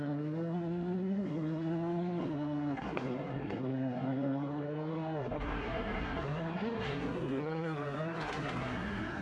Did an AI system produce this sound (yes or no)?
yes